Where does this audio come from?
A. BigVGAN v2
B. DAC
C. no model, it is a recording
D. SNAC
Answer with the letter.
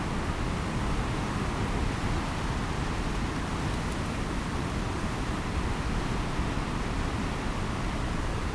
C